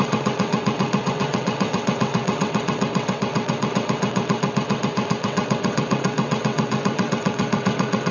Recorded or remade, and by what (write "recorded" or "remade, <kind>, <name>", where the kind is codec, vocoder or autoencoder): remade, vocoder, WaveNeXt